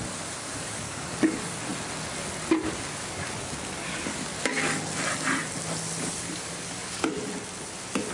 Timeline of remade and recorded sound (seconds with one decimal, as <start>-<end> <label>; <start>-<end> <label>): 0.0-1.7 remade; 1.7-2.7 recorded; 2.7-4.3 remade; 4.3-6.0 recorded; 6.0-7.1 remade; 7.1-8.1 recorded